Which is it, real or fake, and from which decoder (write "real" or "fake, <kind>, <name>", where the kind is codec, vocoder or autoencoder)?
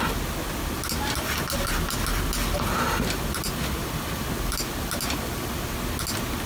real